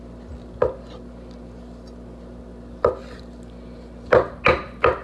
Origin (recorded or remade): recorded